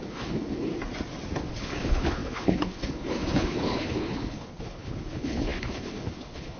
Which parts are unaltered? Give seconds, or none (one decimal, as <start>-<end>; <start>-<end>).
0.7-1.5